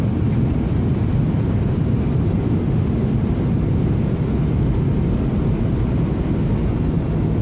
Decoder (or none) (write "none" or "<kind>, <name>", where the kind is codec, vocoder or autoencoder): none